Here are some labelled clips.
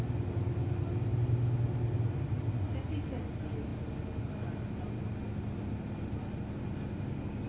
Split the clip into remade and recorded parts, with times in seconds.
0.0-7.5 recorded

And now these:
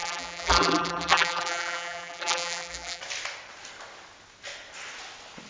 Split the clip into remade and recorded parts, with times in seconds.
0.0-3.0 remade; 3.0-5.5 recorded